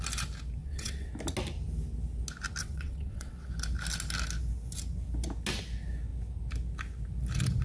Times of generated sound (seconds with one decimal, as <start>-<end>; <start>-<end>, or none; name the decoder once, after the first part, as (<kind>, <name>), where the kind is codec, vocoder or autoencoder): 0.6-1.1 (vocoder, WaveNeXt); 2.6-3.5